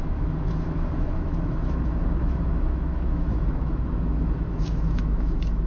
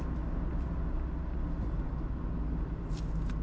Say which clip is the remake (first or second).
first